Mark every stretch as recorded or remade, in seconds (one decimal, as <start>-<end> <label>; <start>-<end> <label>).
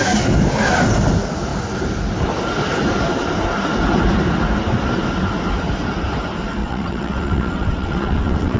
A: 0.0-6.6 recorded; 6.6-8.6 remade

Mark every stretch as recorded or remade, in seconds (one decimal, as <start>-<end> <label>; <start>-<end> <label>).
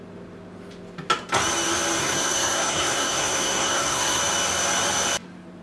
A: 0.0-2.0 recorded; 2.0-4.2 remade; 4.2-5.6 recorded